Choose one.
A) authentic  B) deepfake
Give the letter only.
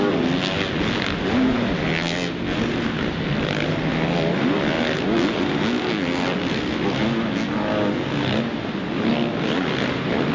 A